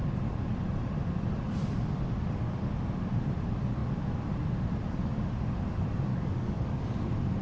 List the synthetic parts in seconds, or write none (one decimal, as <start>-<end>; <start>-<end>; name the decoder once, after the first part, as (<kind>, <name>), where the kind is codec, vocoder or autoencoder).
6.1-6.8 (codec, DAC)